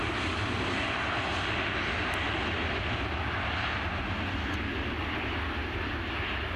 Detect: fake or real real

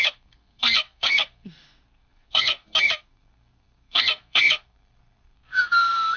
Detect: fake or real fake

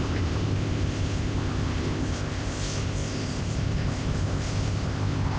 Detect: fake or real fake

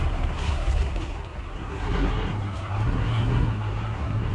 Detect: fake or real fake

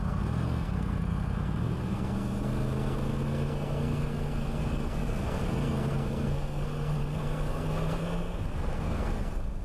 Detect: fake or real fake